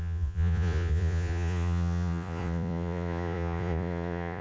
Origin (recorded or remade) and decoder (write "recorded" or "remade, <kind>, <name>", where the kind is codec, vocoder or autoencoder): remade, vocoder, Vocos